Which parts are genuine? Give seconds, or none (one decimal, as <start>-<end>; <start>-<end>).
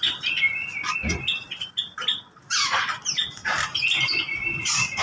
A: 0.0-5.0